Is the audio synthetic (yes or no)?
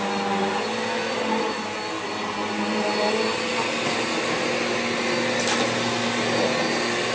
no